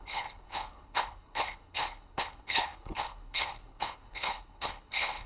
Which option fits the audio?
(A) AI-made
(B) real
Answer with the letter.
A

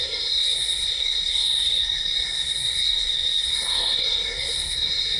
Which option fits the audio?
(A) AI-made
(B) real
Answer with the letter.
A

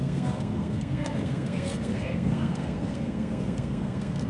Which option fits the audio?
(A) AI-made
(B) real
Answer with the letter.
A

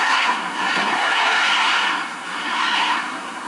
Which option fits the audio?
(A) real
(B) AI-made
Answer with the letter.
B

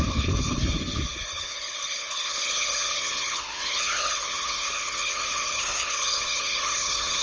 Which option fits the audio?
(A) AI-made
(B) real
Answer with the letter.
A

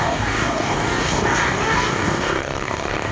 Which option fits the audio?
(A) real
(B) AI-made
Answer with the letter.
B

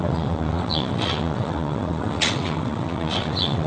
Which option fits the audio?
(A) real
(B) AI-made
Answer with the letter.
B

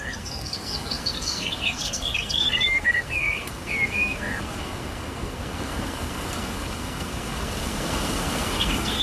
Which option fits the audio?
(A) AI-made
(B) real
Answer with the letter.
A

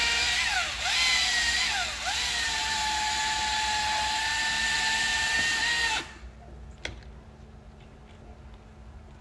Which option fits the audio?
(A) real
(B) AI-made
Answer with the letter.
A